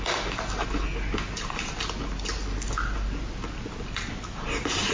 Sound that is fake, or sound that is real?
real